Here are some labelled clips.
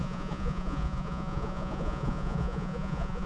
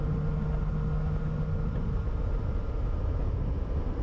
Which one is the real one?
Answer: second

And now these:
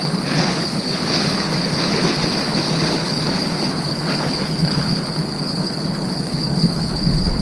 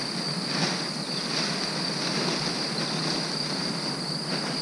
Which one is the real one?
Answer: second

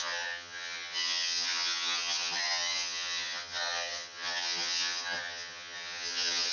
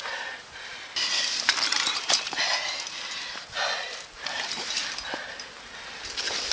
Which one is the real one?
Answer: second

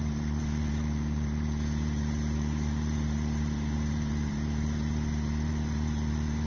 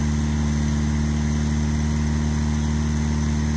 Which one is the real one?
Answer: second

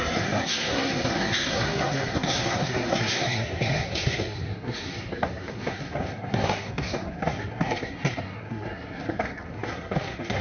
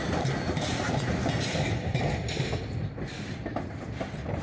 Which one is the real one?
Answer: second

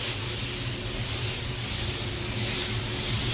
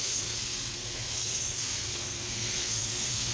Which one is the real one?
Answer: first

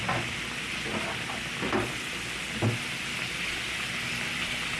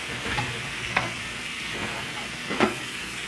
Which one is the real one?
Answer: first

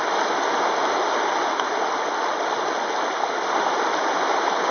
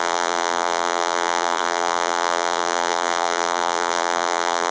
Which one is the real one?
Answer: first